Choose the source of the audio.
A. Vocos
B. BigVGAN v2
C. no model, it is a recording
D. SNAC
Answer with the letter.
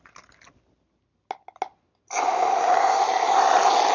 C